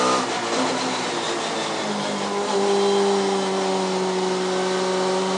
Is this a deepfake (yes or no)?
no